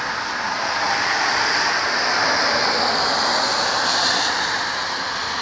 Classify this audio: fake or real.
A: fake